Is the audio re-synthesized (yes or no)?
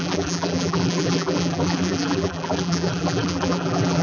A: yes